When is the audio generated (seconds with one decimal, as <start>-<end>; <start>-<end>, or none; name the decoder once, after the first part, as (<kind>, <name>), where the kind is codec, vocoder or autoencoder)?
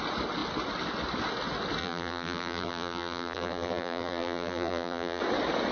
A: 1.8-5.2 (vocoder, BigVGAN v2)